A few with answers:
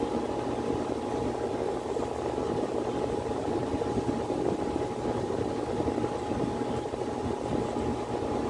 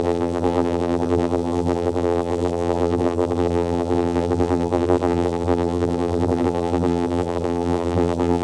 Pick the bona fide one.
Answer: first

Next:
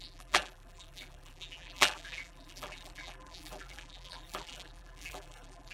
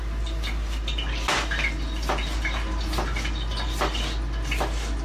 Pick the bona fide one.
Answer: second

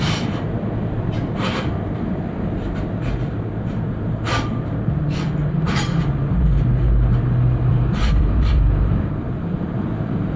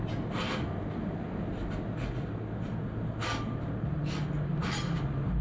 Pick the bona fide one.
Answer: second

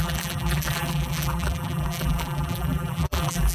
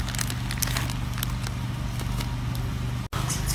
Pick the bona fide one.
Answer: second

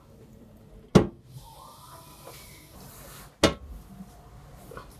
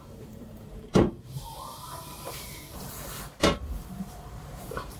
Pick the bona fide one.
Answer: first